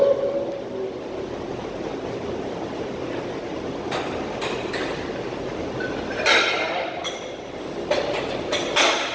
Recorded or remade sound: recorded